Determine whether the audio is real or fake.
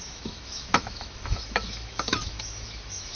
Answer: fake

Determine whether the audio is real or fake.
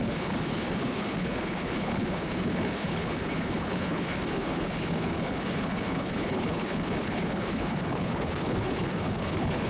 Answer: fake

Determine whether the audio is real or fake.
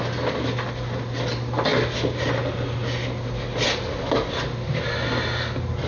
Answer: real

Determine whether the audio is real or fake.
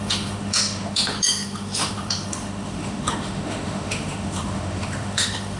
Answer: fake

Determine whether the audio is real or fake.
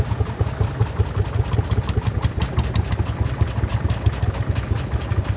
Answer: real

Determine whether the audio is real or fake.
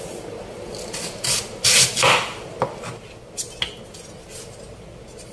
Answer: real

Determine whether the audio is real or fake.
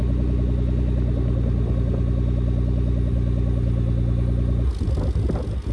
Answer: real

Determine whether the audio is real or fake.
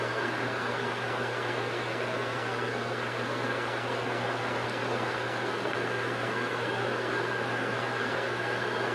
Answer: fake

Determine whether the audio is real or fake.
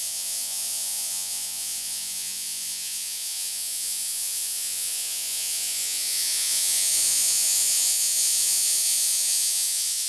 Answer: fake